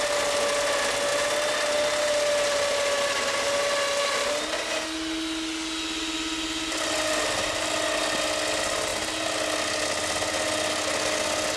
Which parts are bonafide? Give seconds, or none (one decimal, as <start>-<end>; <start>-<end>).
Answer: 0.0-11.6